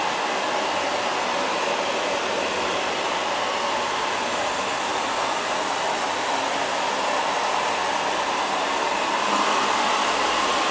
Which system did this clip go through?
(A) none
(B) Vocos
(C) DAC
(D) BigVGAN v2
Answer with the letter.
A